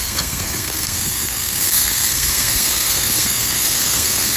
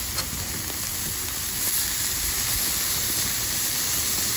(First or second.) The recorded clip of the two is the second